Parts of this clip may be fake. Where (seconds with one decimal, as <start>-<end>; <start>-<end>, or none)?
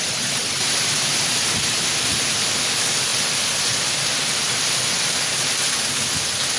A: 3.1-5.1